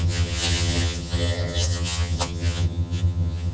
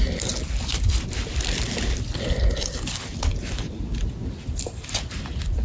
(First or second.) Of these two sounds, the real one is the second